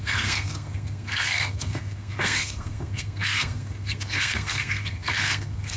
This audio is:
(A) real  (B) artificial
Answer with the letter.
B